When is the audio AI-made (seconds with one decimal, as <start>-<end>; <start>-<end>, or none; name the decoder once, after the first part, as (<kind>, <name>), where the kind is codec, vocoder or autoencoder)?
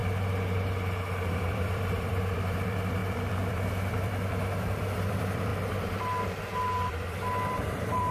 1.4-8.1 (vocoder, BigVGAN v2)